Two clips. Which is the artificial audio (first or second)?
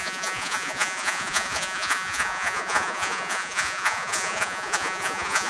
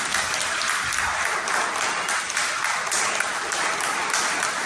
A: first